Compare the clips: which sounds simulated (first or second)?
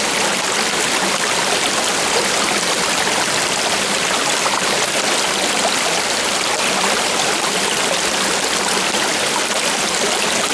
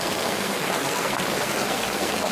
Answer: second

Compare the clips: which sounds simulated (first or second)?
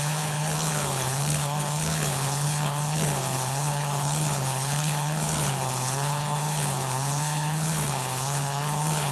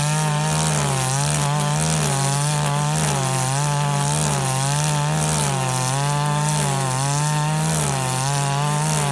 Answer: first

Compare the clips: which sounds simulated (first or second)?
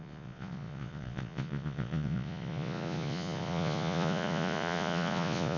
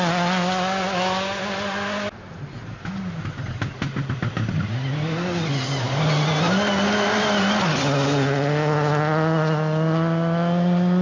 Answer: first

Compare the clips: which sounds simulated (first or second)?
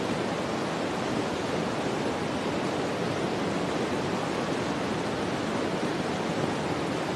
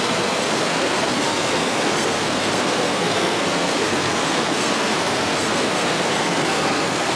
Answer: second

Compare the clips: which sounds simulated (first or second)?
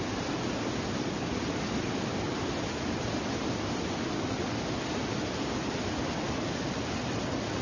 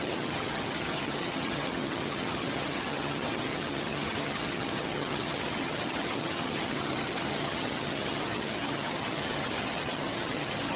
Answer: second